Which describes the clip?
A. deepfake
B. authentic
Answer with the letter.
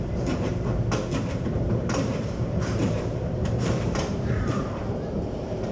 A